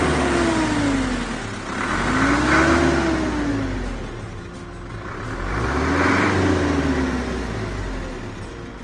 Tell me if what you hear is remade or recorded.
recorded